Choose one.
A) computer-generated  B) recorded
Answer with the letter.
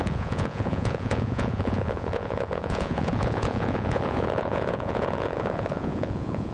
A